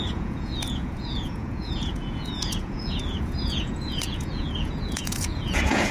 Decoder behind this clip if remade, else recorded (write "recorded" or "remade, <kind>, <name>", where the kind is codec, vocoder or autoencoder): remade, vocoder, Vocos